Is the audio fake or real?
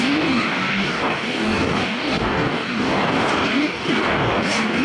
fake